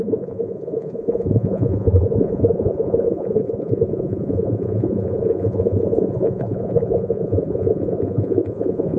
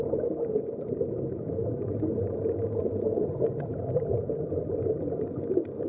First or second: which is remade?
first